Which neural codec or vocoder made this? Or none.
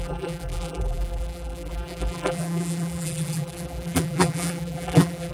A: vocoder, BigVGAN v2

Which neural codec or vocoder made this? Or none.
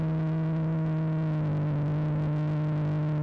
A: none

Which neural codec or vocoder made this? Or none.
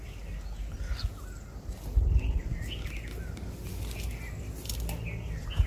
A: none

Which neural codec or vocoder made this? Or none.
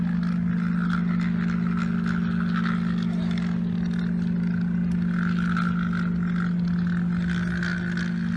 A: none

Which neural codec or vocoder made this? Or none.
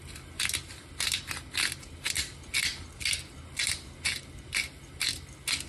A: none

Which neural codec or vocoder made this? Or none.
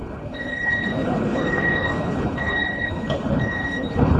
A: codec, HILCodec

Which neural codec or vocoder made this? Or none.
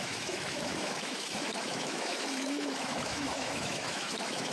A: autoencoder, DAC-VAE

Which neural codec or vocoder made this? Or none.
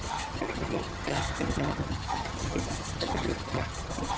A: vocoder, HiFi-GAN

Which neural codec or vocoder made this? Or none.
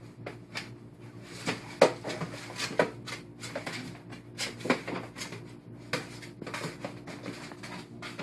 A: none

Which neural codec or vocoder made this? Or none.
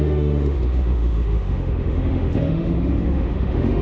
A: autoencoder, DAC-VAE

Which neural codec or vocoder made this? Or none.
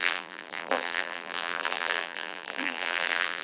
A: vocoder, BigVGAN v2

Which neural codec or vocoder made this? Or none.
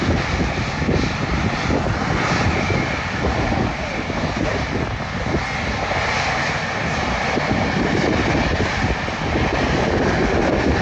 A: none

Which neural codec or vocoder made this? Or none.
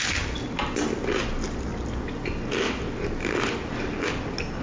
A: none